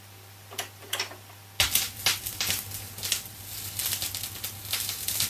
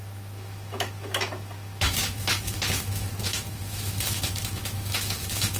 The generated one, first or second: second